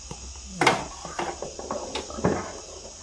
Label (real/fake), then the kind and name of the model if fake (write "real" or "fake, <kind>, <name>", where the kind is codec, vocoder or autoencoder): real